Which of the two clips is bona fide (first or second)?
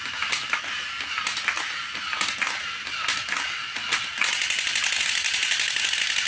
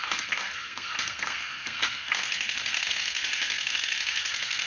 first